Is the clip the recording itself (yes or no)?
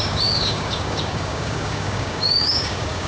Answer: no